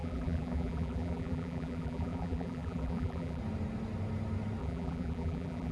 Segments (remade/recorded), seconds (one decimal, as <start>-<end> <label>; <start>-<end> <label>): 0.0-3.4 remade; 3.4-4.6 recorded; 4.6-5.7 remade